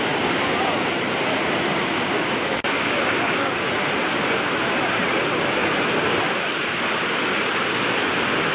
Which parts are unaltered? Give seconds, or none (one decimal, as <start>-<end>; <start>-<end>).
0.0-1.7; 3.6-8.5